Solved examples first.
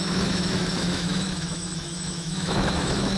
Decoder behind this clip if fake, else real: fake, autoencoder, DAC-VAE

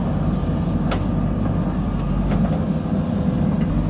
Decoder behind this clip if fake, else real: real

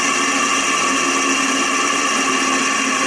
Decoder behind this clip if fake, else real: real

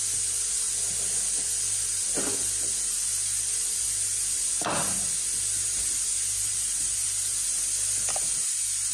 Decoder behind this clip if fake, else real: real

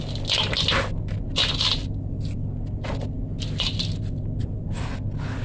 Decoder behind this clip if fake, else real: real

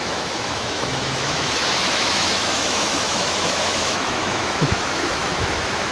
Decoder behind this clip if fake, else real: fake, autoencoder, DAC-VAE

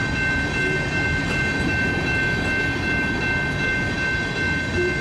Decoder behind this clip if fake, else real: real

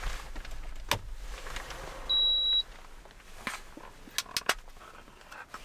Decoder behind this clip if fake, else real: real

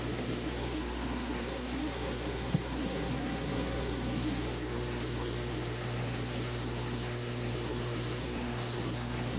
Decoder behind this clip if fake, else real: fake, codec, SNAC